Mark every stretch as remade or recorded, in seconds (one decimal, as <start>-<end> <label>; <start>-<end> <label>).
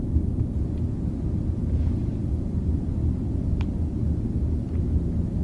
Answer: 0.0-2.0 recorded; 2.0-3.2 remade; 3.2-5.4 recorded